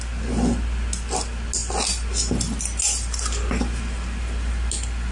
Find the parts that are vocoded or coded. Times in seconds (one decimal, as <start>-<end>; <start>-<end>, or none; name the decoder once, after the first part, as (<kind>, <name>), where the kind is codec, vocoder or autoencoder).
none